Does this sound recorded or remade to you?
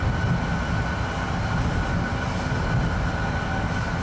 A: recorded